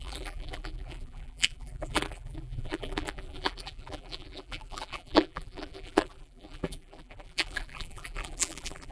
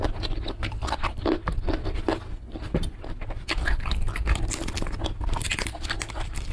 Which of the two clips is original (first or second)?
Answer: second